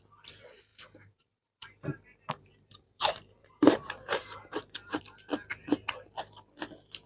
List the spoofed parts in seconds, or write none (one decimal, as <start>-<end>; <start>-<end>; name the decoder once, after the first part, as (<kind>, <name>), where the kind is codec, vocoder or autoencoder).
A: 0.7-5.0 (vocoder, BigVGAN v2)